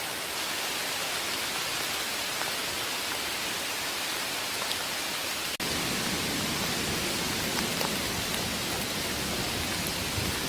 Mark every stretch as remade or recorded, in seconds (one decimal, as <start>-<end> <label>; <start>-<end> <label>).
0.0-10.5 recorded